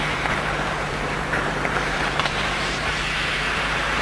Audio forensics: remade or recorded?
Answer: remade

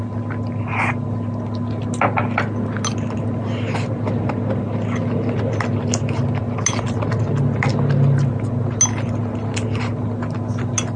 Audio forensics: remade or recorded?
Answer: recorded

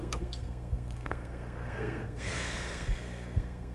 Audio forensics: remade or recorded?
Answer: remade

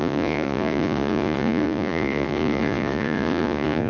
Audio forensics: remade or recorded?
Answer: remade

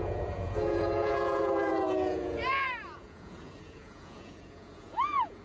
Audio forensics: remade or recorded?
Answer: remade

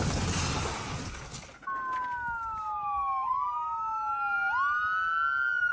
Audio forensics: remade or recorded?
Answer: recorded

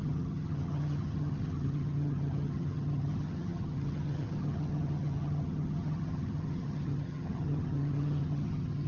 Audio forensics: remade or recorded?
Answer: remade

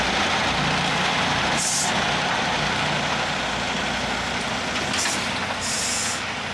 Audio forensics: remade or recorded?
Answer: recorded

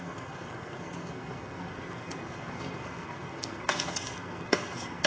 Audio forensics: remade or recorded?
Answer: remade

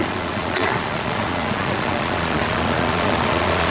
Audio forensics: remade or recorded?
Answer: remade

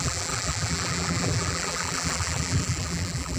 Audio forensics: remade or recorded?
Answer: remade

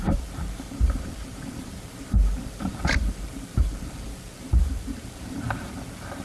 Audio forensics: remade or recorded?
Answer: remade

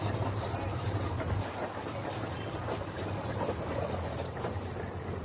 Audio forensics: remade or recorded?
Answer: remade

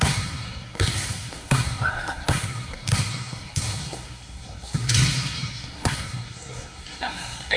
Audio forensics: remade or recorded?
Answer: remade